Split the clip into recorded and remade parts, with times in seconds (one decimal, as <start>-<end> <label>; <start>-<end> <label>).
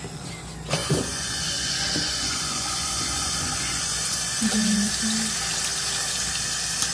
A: 0.0-0.8 recorded; 0.8-4.9 remade; 4.9-6.9 recorded